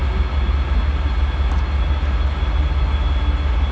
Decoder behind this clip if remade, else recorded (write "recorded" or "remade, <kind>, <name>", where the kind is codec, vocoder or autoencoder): recorded